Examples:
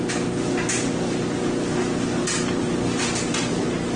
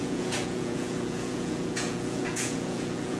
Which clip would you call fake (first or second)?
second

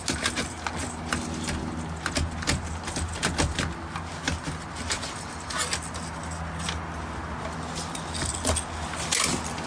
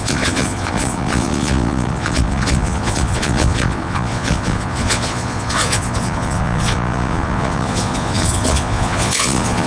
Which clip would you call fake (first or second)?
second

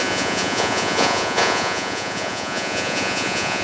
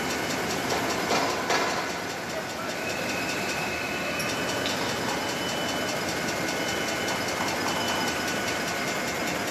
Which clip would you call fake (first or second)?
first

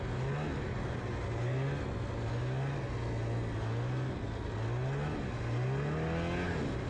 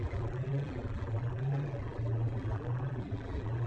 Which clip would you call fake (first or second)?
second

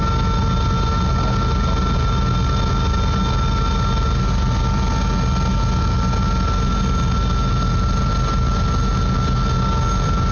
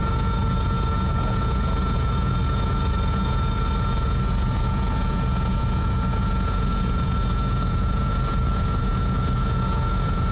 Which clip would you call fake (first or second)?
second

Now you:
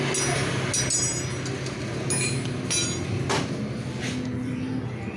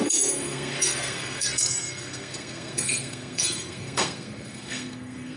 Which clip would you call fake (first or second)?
second